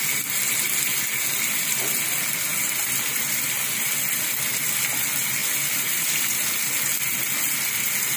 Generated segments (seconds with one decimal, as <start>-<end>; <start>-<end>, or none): 5.4-6.5